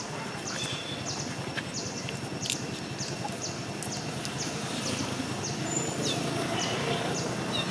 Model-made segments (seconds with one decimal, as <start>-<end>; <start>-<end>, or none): none